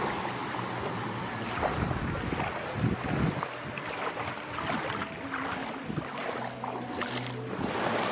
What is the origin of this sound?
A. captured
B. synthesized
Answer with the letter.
A